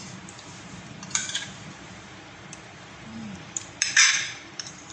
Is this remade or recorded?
remade